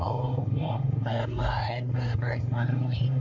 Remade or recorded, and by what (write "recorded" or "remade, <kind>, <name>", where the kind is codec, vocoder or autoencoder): remade, codec, SNAC